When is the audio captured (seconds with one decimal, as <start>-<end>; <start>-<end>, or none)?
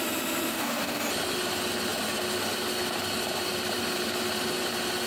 0.0-0.5; 1.0-5.1